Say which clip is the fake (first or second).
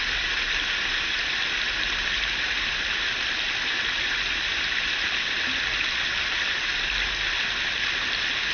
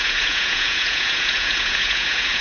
second